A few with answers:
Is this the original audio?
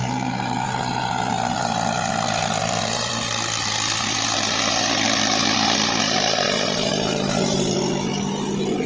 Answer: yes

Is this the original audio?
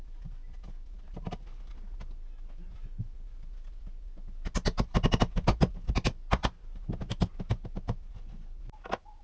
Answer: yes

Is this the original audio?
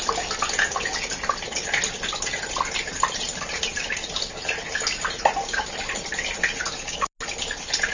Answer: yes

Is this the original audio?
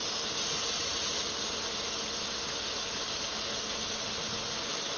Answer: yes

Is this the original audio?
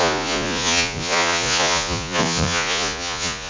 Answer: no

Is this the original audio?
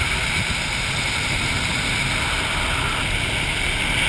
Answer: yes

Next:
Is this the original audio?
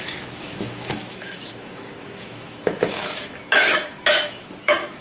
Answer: no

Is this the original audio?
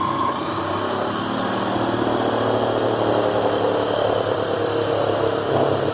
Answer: yes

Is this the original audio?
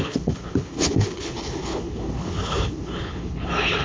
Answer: no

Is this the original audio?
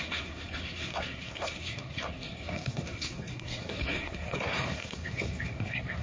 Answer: no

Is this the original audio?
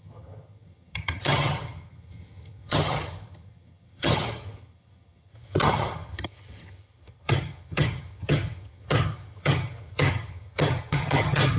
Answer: no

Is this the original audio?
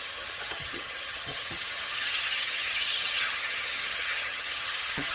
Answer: no